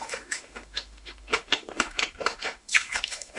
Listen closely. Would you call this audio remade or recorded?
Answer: remade